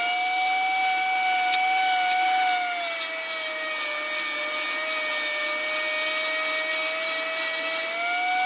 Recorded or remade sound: recorded